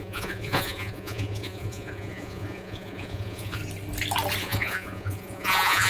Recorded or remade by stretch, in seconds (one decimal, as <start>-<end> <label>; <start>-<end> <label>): 0.0-3.6 remade; 3.6-4.4 recorded; 4.4-5.9 remade